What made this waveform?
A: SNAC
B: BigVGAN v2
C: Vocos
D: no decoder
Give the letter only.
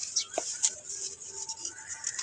D